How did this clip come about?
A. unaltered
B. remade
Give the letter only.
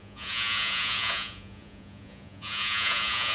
B